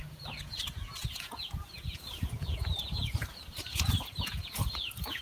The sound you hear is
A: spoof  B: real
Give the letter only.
A